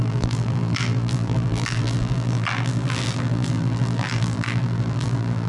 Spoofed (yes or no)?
yes